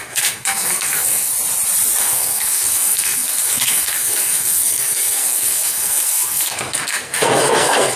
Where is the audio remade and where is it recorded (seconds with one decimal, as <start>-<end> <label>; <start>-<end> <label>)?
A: 0.0-1.3 remade; 1.3-2.0 recorded; 2.0-8.0 remade